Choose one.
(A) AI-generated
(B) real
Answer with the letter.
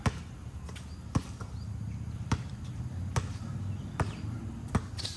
B